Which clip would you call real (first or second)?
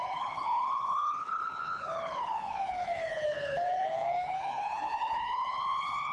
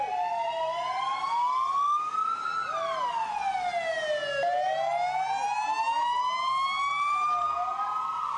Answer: second